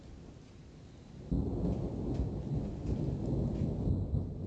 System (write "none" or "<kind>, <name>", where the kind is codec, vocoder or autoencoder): none